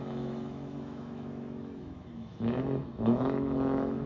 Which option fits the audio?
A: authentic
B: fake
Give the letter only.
B